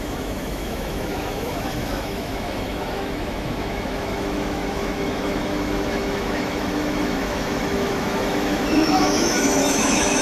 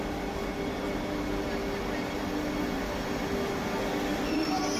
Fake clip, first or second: first